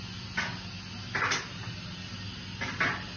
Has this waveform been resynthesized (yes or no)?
no